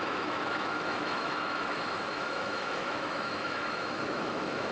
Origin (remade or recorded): remade